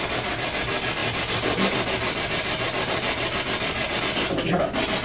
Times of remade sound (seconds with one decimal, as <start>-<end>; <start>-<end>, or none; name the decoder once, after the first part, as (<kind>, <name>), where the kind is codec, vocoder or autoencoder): 1.0-4.0 (vocoder, BigVGAN v2)